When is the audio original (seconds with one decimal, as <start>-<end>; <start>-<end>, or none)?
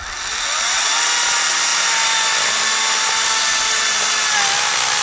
0.0-5.0